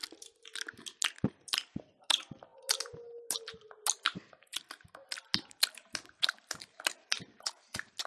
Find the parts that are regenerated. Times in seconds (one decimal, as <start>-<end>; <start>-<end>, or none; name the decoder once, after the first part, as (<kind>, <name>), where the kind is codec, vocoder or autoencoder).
none